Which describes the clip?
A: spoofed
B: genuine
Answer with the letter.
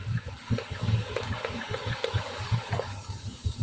A